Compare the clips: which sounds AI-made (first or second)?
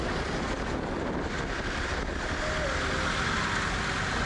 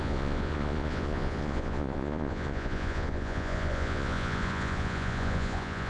second